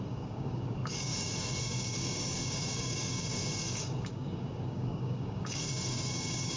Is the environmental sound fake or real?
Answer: fake